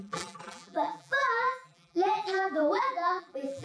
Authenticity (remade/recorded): remade